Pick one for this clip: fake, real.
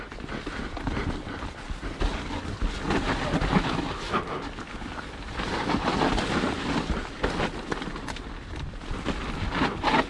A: real